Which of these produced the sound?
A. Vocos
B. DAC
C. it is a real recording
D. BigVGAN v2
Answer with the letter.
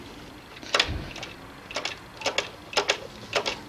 C